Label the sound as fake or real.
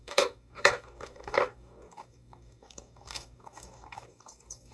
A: fake